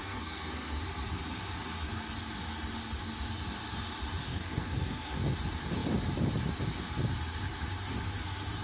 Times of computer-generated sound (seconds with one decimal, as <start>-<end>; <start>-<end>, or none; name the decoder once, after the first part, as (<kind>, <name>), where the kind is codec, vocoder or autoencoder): 0.0-0.8 (codec, SNAC); 4.3-5.2